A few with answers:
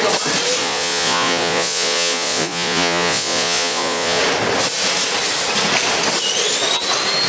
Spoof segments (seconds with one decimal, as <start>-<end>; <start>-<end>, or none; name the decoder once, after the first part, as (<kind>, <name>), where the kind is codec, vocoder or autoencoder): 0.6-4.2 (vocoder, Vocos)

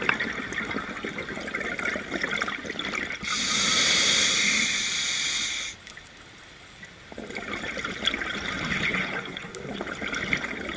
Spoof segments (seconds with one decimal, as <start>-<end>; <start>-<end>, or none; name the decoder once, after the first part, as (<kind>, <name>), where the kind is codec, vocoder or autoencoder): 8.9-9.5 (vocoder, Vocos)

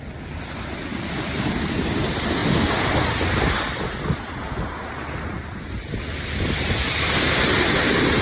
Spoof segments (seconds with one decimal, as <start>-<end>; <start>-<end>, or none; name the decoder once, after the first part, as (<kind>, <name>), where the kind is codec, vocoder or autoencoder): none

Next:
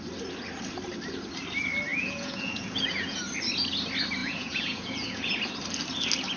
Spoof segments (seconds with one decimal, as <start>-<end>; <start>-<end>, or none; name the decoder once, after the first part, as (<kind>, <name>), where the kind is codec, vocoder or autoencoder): 1.9-3.2 (vocoder, Vocos); 4.2-5.3

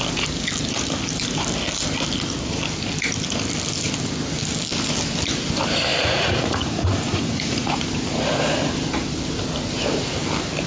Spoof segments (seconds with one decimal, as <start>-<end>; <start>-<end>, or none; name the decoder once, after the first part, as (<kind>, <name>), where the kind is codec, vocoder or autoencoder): 5.9-7.8 (vocoder, Vocos)